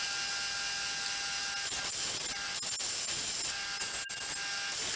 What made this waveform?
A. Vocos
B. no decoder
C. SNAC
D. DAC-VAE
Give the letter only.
B